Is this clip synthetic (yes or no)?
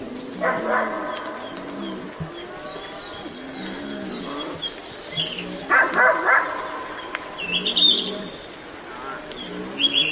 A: no